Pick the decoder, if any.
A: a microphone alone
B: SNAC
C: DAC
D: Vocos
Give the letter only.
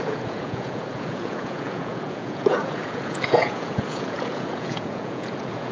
D